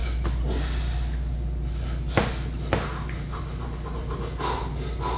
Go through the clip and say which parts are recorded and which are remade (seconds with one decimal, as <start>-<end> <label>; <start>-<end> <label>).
0.0-5.2 recorded